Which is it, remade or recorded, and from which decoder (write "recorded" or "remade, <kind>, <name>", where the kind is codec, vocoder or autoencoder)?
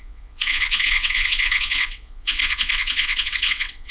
remade, vocoder, WaveNeXt